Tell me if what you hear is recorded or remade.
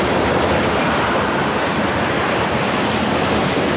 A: recorded